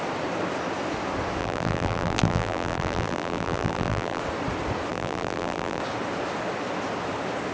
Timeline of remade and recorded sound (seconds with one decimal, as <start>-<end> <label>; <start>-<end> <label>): 0.0-1.4 recorded; 1.4-4.2 remade; 4.2-4.9 recorded; 4.9-5.8 remade; 5.8-7.5 recorded